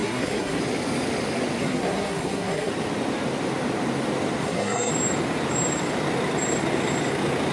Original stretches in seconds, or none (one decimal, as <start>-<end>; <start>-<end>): 0.6-1.6; 2.7-4.4; 4.9-7.5